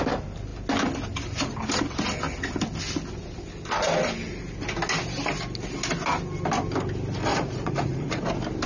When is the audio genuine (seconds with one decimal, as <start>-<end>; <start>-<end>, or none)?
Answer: 0.0-7.3; 8.2-8.7